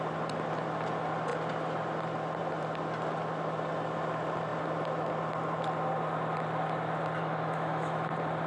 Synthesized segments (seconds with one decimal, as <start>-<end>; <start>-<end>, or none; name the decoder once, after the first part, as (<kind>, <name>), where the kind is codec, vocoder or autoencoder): 7.2-8.1 (autoencoder, DAC-VAE)